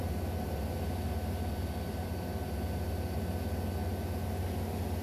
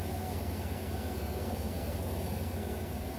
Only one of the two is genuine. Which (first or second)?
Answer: first